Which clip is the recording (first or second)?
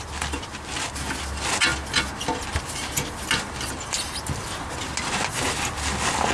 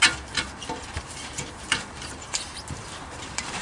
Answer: first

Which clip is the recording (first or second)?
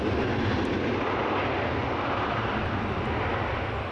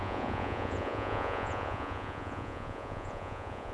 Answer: first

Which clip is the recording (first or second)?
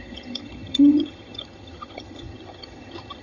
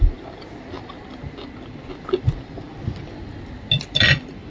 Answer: second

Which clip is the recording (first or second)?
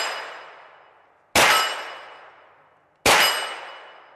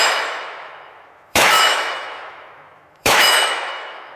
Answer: first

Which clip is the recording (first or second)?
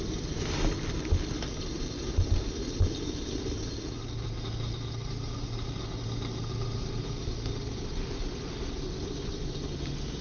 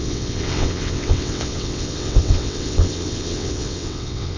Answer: first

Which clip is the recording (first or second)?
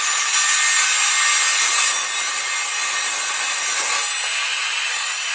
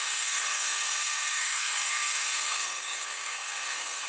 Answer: first